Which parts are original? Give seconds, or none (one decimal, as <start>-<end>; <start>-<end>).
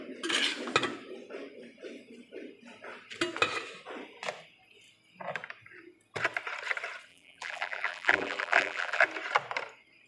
0.0-7.1; 9.0-10.1